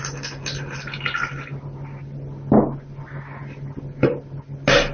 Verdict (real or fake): real